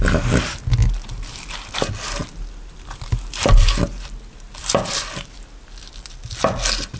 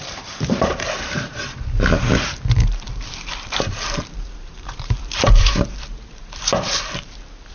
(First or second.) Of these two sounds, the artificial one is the second